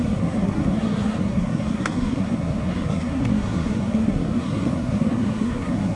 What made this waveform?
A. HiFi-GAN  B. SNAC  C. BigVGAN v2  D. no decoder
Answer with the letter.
B